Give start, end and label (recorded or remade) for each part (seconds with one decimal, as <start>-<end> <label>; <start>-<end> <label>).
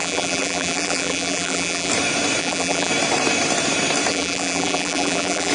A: 0.0-1.9 remade; 1.9-2.4 recorded; 2.4-2.9 remade; 2.9-4.1 recorded; 4.1-5.5 remade